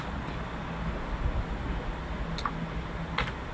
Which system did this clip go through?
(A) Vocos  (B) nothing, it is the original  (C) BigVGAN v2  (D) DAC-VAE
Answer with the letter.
B